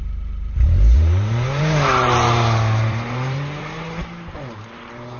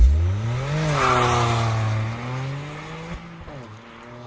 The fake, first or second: first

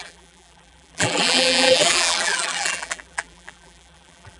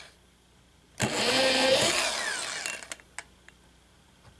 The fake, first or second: first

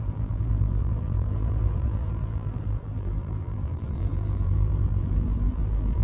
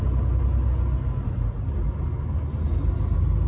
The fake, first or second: first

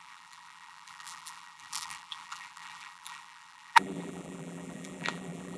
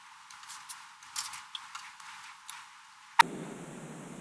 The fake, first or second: first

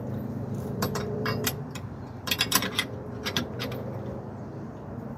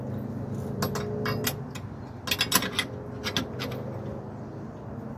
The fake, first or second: first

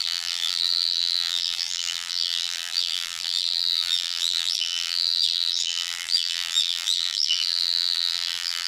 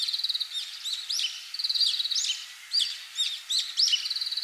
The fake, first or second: first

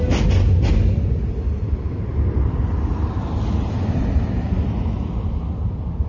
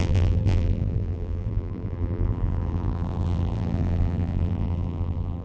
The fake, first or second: second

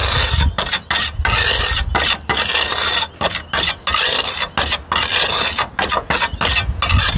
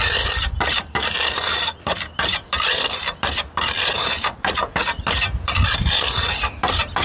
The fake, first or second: second